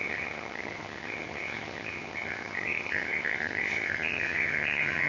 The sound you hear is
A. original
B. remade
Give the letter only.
B